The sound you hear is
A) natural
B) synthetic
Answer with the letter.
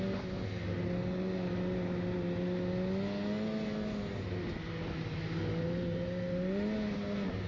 A